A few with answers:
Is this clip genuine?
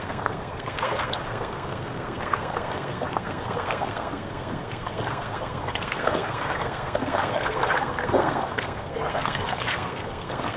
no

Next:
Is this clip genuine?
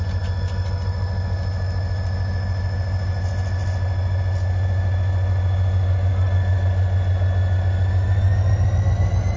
yes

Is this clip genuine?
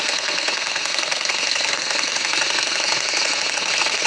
no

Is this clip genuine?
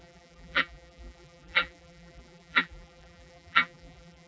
no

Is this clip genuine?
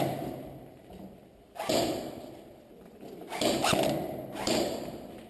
yes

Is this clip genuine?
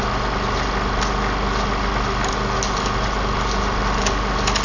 yes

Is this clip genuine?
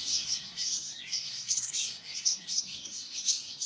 no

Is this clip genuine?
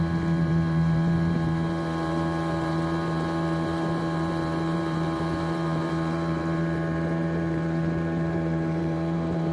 no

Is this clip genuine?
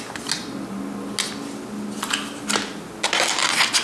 yes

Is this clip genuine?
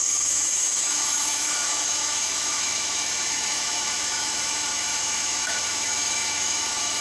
no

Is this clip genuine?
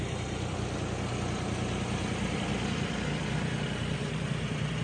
yes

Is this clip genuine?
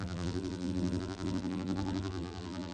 no